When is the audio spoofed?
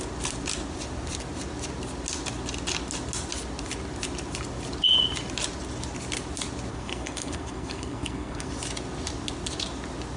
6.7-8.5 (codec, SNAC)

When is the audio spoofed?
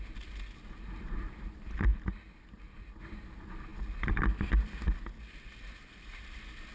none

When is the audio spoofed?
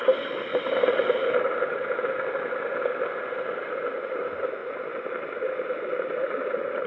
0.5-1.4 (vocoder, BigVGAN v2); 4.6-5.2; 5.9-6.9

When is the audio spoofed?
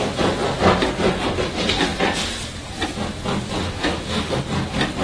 3.6-4.4 (autoencoder, DAC-VAE)